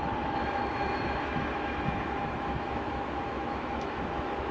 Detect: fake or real fake